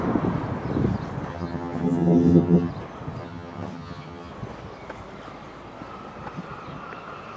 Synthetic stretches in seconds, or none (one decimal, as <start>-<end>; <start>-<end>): 1.3-2.7; 3.2-4.3